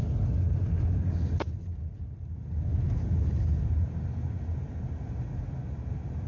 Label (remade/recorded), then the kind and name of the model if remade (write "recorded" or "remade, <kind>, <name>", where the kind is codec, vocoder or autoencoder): recorded